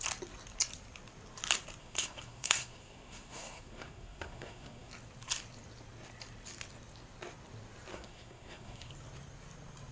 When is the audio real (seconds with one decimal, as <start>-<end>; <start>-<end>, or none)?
0.0-1.8; 4.9-7.9; 8.9-9.9